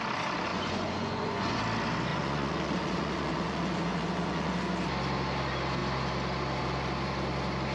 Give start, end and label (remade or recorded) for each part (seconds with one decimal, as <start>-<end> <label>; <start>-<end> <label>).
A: 0.0-0.5 recorded; 0.5-1.6 remade; 1.6-2.1 recorded; 2.1-4.5 remade; 4.5-7.7 recorded